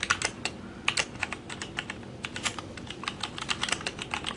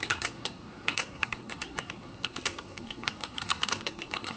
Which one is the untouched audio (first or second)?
first